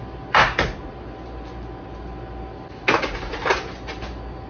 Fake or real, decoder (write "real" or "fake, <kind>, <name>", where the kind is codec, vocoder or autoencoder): real